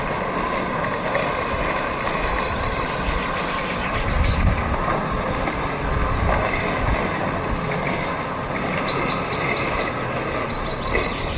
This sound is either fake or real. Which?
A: real